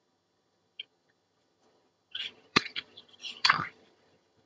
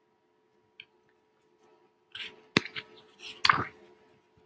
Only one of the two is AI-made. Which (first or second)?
first